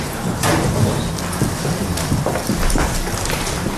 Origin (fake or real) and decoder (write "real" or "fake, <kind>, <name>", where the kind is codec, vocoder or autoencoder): real